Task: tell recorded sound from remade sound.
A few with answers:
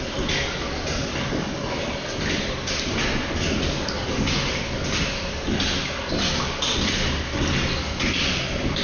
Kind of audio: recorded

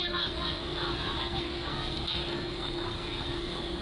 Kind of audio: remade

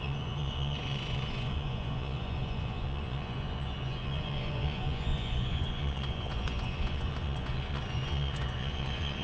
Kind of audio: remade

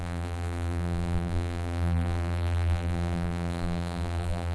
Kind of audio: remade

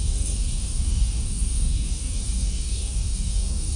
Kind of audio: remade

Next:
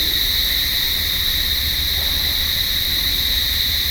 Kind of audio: recorded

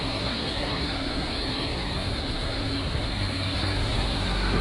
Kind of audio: remade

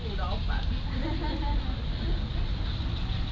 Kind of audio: recorded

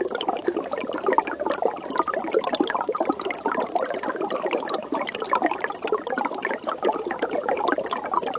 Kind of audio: recorded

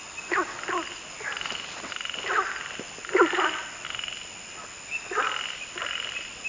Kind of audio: recorded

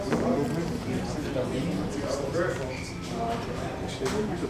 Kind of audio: recorded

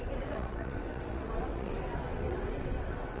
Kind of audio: remade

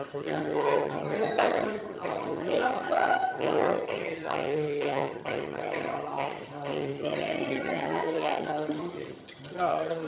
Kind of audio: remade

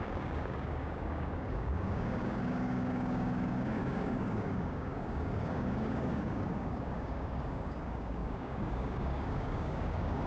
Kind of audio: remade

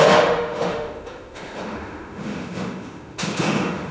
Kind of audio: remade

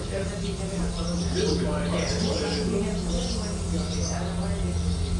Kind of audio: recorded